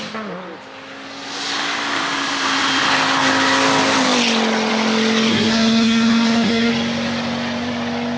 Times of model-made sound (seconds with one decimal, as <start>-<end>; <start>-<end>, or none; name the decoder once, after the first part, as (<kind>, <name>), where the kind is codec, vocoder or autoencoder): 5.3-6.7 (codec, SNAC)